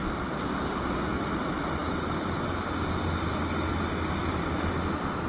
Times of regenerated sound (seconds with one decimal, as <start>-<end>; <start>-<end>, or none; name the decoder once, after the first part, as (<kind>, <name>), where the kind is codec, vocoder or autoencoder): none